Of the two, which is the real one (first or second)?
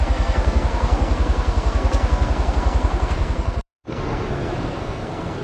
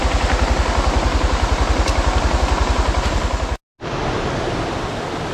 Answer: second